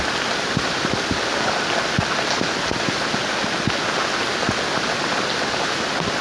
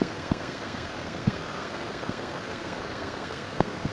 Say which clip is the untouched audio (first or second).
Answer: first